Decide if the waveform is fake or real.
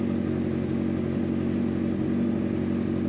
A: real